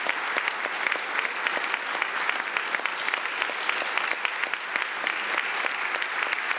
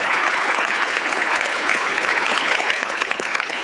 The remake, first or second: second